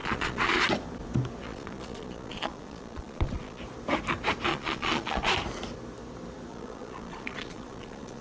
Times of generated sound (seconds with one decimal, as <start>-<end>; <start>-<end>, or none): 0.0-0.6; 1.4-3.6; 4.5-5.3; 6.5-8.2